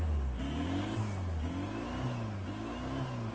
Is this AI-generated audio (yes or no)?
no